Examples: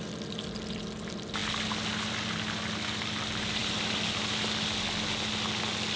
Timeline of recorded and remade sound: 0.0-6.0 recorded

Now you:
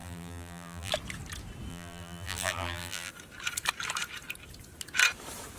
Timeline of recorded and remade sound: 0.0-0.9 remade; 0.9-1.7 recorded; 1.7-3.1 remade; 3.1-5.6 recorded

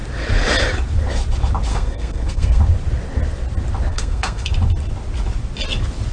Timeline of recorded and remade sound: 0.0-1.7 recorded; 1.7-2.6 remade; 2.6-3.9 recorded; 3.9-4.5 remade; 4.5-6.1 recorded

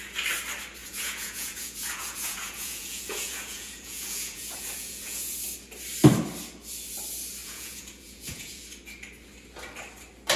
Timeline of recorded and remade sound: 0.0-0.8 recorded; 0.8-5.4 remade; 5.4-7.4 recorded; 7.4-8.6 remade; 8.6-10.4 recorded